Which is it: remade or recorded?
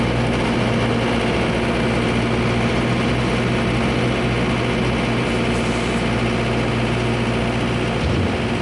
recorded